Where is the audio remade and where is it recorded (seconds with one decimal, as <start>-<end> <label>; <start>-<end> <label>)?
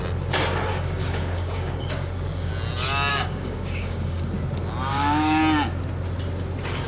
0.0-0.7 recorded; 0.7-2.5 remade; 2.5-3.1 recorded; 3.1-4.2 remade; 4.2-4.9 recorded; 4.9-5.4 remade; 5.4-6.9 recorded